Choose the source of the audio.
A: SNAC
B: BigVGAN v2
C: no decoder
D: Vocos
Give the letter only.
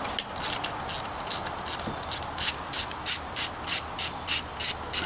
C